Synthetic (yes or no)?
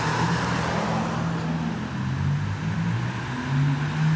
no